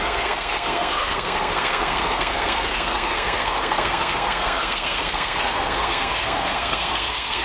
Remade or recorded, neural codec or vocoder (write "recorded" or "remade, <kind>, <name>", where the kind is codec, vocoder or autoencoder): remade, codec, SNAC